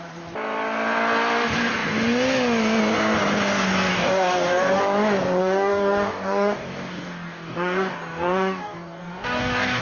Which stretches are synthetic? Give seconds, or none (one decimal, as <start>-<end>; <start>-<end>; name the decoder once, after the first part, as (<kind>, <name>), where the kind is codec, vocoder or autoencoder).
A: 3.9-4.8 (codec, DAC); 5.4-9.8